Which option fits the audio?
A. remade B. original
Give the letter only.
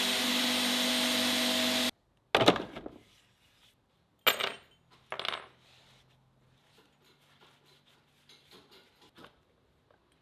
B